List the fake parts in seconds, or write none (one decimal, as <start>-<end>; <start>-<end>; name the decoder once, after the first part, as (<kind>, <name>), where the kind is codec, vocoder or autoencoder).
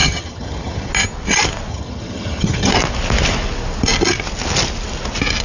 0.0-0.9 (vocoder, HiFi-GAN); 1.7-2.7